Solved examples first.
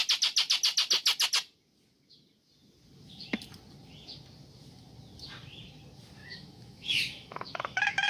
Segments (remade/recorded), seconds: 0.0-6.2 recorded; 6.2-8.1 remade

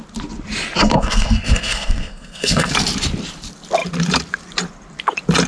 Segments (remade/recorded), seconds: 0.0-0.8 recorded; 0.8-2.7 remade; 2.7-5.5 recorded

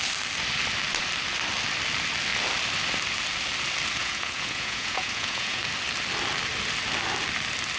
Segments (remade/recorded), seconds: 0.0-4.0 recorded; 4.0-5.6 remade; 5.6-7.8 recorded

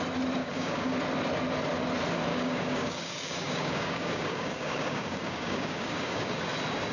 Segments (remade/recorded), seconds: 0.0-0.4 recorded; 0.4-1.0 remade; 1.0-2.3 recorded; 2.3-6.4 remade; 6.4-6.9 recorded

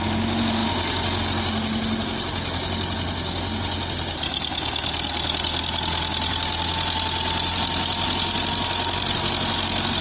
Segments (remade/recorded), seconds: 0.0-10.0 recorded

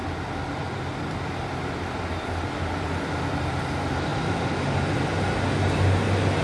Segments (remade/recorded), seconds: 0.0-4.1 recorded; 4.1-5.0 remade; 5.0-6.4 recorded